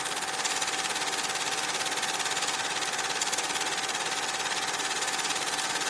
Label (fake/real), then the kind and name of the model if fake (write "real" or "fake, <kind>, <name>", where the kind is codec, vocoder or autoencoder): real